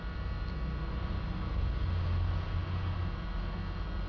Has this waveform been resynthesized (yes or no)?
no